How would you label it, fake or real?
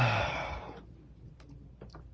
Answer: real